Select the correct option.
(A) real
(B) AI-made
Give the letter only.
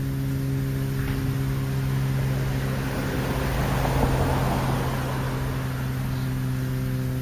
A